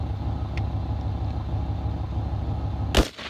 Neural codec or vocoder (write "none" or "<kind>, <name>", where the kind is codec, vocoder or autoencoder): none